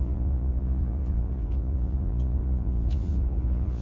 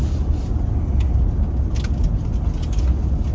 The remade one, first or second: first